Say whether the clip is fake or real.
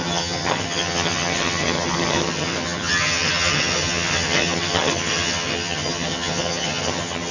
fake